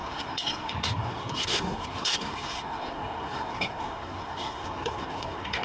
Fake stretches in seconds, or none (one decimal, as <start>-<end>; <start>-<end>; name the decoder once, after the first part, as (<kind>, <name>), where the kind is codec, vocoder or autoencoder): 0.0-5.6 (codec, SNAC)